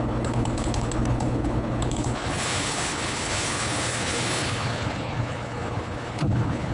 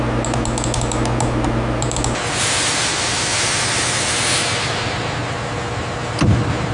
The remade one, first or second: first